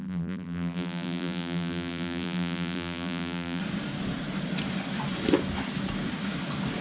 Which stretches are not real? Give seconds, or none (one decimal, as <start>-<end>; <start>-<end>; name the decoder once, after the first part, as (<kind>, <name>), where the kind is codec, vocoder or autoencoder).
0.0-3.6 (vocoder, BigVGAN v2)